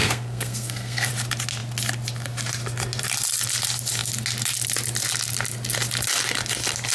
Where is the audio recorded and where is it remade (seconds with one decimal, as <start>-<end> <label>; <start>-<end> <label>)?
0.0-1.1 remade; 1.1-6.9 recorded